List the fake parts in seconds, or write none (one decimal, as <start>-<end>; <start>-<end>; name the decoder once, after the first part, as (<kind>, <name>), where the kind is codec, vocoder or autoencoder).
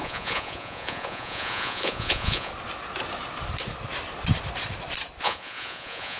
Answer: 0.0-2.5 (vocoder, Vocos); 5.2-6.2